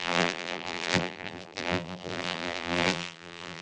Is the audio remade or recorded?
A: remade